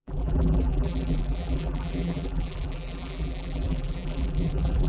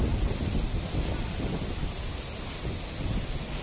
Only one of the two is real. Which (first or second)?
second